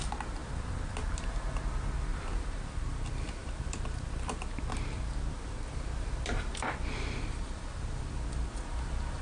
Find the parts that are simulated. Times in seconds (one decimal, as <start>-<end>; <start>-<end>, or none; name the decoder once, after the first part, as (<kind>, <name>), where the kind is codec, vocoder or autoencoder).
0.4-1.3 (vocoder, BigVGAN v2); 2.1-2.8; 3.4-8.0